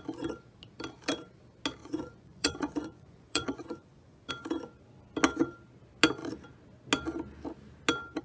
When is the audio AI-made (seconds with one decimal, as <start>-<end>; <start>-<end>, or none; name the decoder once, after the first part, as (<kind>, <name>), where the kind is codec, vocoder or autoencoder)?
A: 1.8-4.3 (vocoder, Vocos)

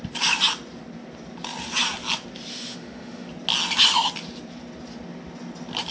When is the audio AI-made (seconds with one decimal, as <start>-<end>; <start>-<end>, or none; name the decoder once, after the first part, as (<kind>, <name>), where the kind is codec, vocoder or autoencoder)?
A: 2.5-3.3 (autoencoder, DAC-VAE)

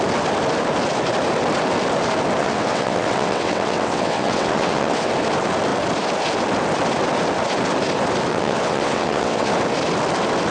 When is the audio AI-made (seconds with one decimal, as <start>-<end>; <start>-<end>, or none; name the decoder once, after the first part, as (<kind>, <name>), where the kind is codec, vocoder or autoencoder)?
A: 2.4-5.1 (vocoder, WaveNeXt); 8.3-9.5

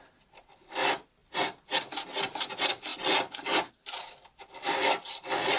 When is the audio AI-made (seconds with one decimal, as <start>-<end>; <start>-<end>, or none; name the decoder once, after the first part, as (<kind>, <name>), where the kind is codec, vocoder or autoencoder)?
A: none

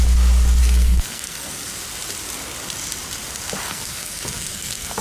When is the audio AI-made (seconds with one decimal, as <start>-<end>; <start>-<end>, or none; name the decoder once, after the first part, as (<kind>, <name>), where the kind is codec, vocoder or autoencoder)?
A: 0.6-1.5 (codec, SNAC); 3.6-5.0

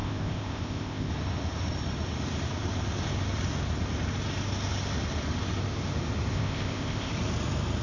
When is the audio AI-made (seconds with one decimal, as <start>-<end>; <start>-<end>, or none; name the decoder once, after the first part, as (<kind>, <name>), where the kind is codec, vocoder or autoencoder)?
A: 0.0-1.1 (codec, ZipCodec); 6.3-7.1

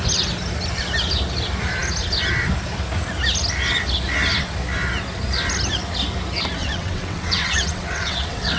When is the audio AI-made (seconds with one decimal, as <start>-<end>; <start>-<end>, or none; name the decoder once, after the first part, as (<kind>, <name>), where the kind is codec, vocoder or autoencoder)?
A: 6.6-8.6 (vocoder, WaveNeXt)